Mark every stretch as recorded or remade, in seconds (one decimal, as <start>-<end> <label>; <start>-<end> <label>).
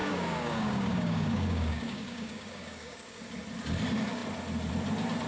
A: 0.0-3.2 remade; 3.2-5.3 recorded